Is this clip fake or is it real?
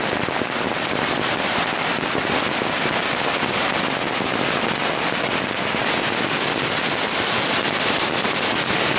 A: real